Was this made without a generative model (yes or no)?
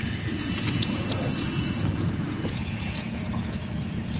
no